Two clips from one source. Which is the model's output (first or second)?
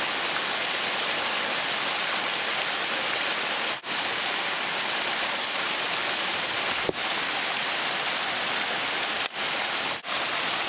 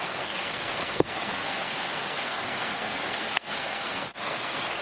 second